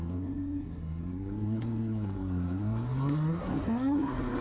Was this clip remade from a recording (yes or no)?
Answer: yes